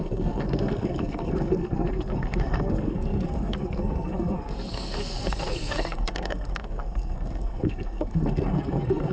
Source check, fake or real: fake